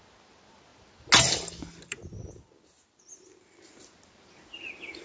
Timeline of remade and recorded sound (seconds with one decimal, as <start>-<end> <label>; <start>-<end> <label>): 0.0-5.0 recorded